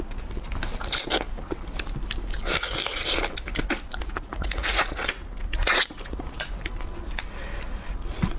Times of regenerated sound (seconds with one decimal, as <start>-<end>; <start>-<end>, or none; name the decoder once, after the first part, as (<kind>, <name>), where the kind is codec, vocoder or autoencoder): 4.0-5.0 (vocoder, Vocos); 5.6-6.5